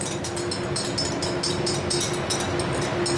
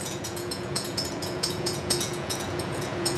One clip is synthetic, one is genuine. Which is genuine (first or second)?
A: first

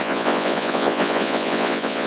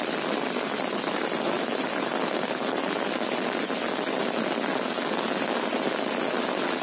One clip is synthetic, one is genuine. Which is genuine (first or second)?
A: second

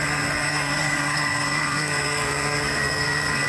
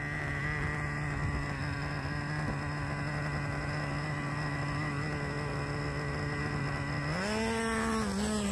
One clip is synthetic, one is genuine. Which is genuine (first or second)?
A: second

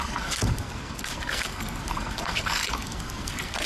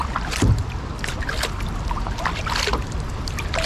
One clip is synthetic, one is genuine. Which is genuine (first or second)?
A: second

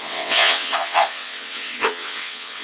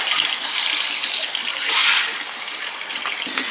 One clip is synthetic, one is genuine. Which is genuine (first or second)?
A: second